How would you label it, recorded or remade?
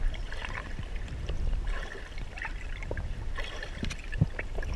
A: remade